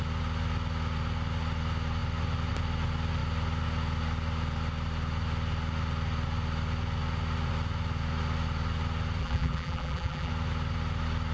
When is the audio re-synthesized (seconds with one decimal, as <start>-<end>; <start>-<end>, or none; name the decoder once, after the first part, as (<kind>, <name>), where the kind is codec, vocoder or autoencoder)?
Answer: 9.2-10.3 (vocoder, BigVGAN v2)